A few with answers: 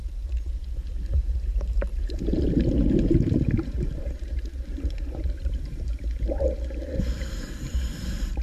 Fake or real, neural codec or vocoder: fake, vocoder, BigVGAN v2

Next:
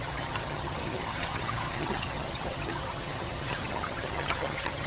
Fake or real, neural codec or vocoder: fake, vocoder, HiFi-GAN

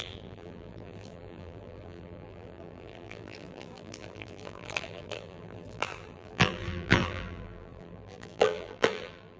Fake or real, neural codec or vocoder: fake, vocoder, BigVGAN v2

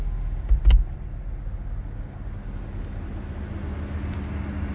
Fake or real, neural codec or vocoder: real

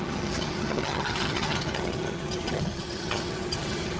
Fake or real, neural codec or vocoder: fake, vocoder, HiFi-GAN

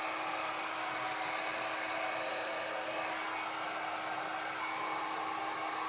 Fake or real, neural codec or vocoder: real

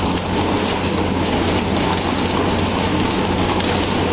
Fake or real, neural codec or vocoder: real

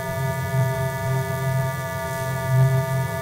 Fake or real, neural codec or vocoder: fake, vocoder, BigVGAN v2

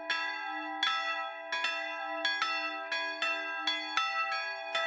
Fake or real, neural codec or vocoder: real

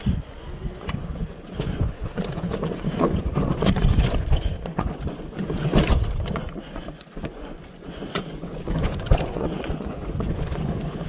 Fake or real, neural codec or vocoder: fake, vocoder, Vocos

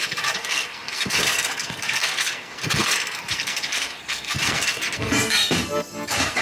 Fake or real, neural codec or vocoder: fake, codec, SNAC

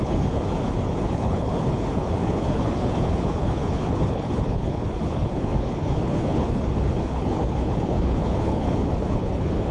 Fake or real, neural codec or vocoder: fake, codec, HILCodec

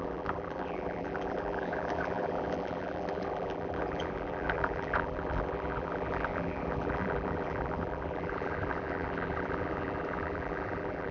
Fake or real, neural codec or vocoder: fake, vocoder, BigVGAN v2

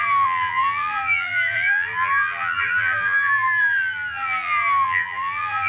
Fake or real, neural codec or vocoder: fake, vocoder, BigVGAN v2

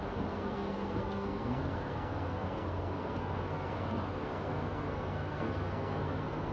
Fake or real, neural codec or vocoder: fake, codec, SNAC